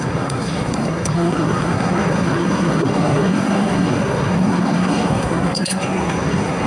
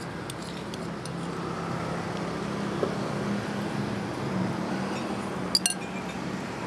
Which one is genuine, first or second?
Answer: second